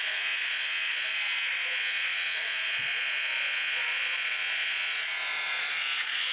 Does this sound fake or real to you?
fake